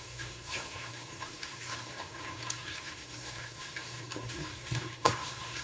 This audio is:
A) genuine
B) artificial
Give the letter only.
B